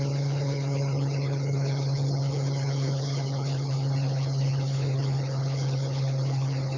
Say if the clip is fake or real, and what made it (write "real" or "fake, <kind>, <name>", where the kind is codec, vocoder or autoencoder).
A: fake, codec, HILCodec